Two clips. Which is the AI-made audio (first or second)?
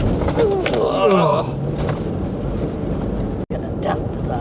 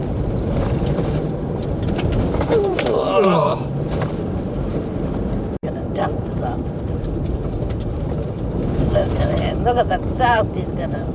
second